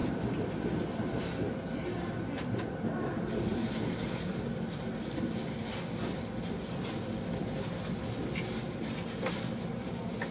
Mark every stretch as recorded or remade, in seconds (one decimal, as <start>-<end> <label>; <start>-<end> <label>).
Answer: 0.0-10.3 recorded